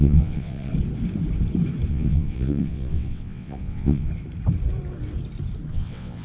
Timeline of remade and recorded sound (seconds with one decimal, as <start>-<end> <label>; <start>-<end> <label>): 0.0-0.7 remade; 0.7-1.9 recorded; 1.9-4.1 remade; 4.1-5.7 recorded; 5.7-6.2 remade